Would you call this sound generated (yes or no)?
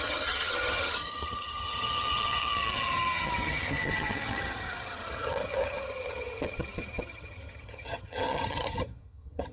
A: yes